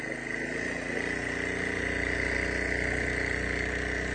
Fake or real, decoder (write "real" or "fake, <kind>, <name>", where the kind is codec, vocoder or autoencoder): real